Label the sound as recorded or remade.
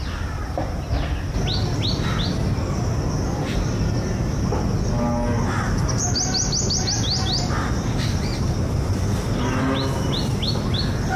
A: recorded